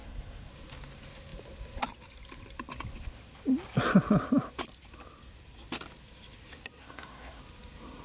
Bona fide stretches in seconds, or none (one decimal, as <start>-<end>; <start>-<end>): 0.5-6.8; 7.4-8.0